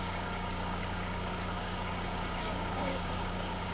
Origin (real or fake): fake